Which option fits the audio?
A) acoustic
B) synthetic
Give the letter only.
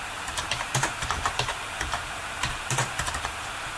B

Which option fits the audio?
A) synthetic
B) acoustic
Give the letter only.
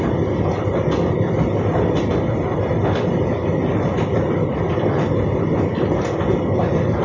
B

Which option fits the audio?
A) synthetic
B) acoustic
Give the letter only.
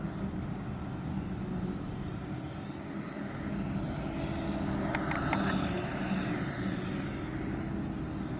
B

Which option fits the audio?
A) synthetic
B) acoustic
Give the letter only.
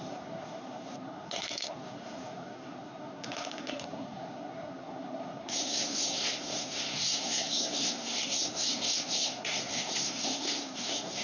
A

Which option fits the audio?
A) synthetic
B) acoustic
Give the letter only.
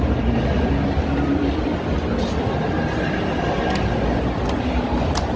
B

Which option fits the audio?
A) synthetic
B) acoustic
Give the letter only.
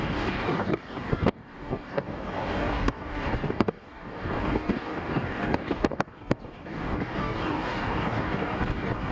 A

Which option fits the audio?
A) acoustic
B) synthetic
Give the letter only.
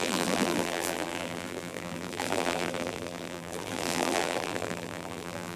B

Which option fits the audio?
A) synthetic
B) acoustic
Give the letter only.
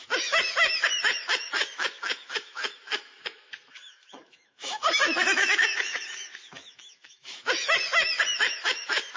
A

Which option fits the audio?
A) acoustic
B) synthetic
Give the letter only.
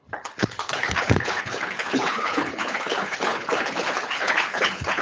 B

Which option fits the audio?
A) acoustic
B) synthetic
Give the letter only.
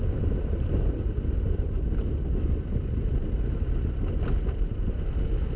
A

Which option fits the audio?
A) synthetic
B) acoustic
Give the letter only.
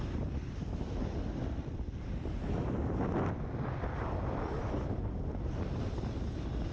B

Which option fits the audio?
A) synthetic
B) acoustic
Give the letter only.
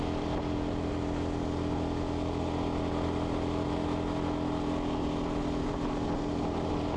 B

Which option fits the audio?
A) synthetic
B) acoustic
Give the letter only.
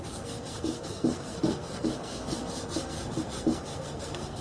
A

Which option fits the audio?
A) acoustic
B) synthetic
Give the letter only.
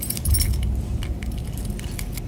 B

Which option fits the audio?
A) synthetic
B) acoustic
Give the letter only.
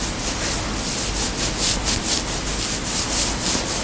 B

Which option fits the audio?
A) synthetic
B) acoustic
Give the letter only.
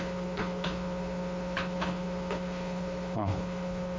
A